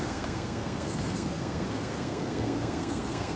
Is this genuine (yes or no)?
no